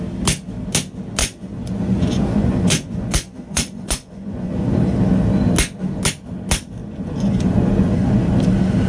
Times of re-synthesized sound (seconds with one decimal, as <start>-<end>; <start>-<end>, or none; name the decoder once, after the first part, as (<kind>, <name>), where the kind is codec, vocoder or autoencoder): 1.2-4.8 (vocoder, Vocos); 6.8-8.4